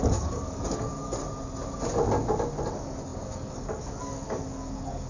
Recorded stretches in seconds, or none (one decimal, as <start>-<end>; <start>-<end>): 1.2-2.7